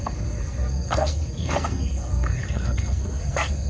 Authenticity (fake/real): fake